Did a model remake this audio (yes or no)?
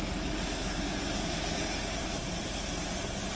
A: no